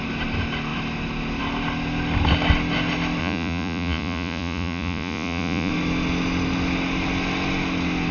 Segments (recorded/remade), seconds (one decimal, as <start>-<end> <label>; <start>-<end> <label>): 0.0-3.2 recorded; 3.2-5.7 remade; 5.7-8.1 recorded